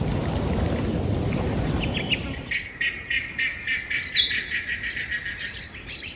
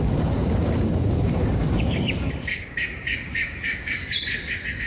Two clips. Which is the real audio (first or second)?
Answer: first